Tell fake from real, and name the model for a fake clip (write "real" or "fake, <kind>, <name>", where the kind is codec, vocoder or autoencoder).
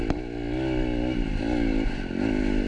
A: real